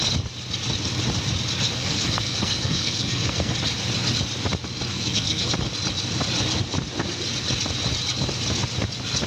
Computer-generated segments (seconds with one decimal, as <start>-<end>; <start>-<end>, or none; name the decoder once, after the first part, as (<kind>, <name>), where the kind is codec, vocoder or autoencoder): 1.8-3.5 (codec, SNAC); 4.9-5.5